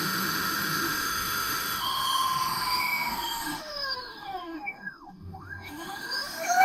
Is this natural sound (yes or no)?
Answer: no